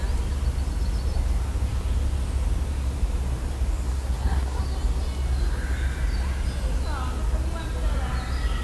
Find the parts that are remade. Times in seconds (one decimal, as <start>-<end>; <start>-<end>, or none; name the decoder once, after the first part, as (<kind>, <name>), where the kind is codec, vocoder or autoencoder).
3.9-4.6 (codec, SNAC)